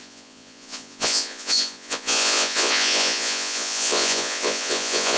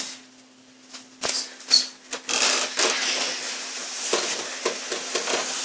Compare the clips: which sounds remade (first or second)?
first